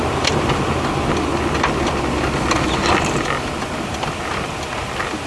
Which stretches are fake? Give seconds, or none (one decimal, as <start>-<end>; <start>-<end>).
none